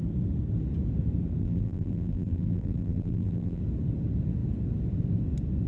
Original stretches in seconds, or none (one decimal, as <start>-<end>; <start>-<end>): 0.0-1.4; 3.6-5.7